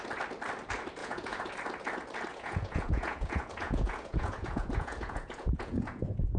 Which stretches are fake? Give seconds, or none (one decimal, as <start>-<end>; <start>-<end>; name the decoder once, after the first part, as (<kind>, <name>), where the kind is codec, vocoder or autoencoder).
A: 1.0-1.5 (vocoder, Vocos); 2.3-6.4